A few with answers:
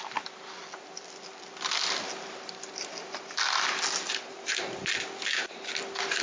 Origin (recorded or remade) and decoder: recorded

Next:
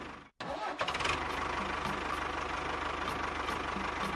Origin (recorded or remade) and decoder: recorded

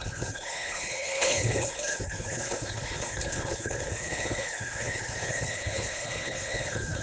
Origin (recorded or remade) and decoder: remade, codec, HILCodec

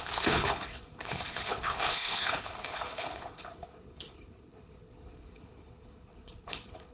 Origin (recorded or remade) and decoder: remade, codec, HILCodec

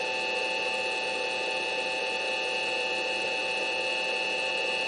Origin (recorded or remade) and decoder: recorded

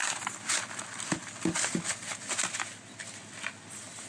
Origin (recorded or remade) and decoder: recorded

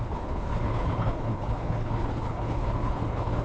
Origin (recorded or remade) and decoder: remade, codec, HILCodec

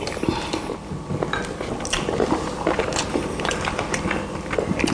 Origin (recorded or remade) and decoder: recorded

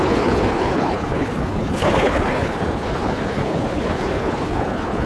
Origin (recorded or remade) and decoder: remade, codec, HILCodec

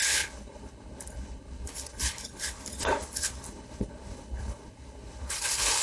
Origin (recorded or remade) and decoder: remade, codec, HILCodec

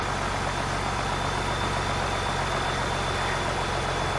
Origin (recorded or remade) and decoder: recorded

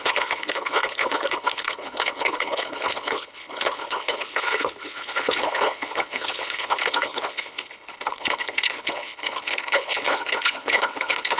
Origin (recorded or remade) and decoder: remade, codec, HILCodec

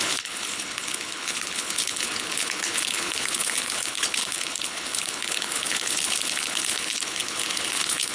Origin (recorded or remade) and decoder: remade, codec, HILCodec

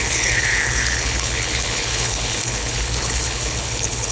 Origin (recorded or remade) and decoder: remade, codec, HILCodec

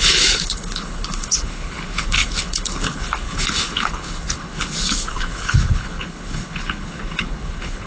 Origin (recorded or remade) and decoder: remade, codec, HILCodec